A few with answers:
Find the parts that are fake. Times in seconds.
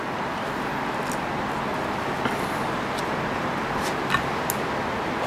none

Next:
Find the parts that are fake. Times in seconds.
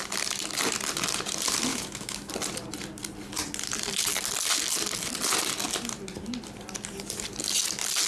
1.7-2.3 (autoencoder, DAC-VAE)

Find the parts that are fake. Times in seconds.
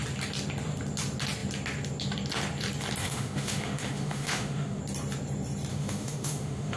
3.0-4.8 (autoencoder, DAC-VAE); 5.7-6.8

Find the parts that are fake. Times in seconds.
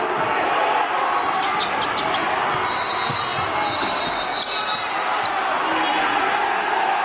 none